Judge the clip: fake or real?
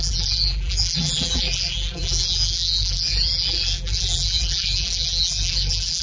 fake